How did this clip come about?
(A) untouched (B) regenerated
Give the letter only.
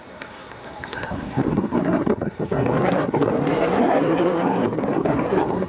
B